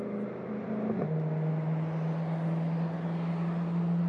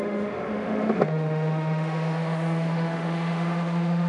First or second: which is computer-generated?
second